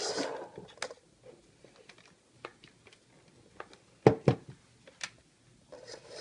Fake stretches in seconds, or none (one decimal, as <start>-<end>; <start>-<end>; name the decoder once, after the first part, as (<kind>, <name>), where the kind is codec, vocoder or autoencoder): none